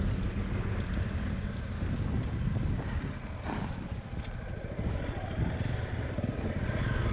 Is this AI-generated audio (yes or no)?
no